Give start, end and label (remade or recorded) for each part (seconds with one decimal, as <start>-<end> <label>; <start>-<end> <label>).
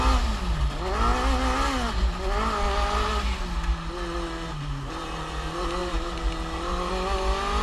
0.0-5.8 recorded; 5.8-6.9 remade; 6.9-7.6 recorded